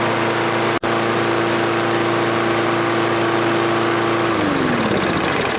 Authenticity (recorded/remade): recorded